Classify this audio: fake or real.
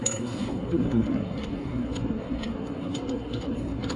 fake